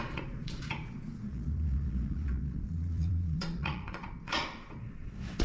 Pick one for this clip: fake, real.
fake